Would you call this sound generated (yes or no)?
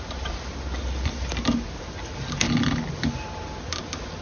no